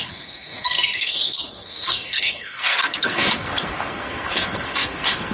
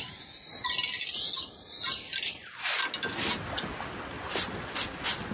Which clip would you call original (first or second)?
second